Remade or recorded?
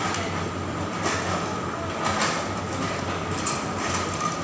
recorded